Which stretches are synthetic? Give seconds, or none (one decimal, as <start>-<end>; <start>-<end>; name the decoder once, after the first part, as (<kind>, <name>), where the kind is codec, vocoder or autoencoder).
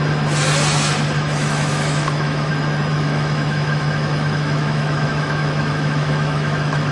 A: 1.4-2.5 (autoencoder, DAC-VAE); 2.9-6.9